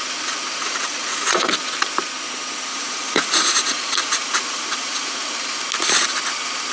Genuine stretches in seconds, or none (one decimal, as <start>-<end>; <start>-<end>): 0.0-0.6; 1.5-2.7; 5.6-6.7

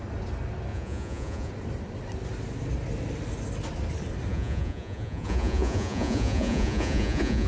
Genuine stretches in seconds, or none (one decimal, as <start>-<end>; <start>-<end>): 0.0-0.7; 1.5-4.3

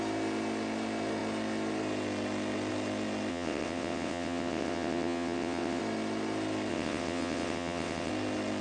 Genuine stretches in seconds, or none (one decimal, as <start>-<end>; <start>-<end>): 0.0-3.3; 5.8-6.7; 8.1-8.6

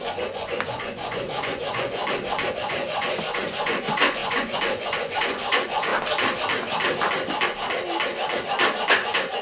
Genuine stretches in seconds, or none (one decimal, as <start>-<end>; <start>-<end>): 2.0-2.5; 5.9-8.9

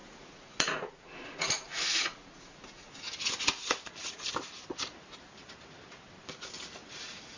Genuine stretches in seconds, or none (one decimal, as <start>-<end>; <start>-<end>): 3.0-7.4